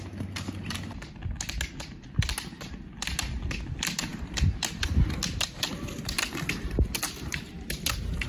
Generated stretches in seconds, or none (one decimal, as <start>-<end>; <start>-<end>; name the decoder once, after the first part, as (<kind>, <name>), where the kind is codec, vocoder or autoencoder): none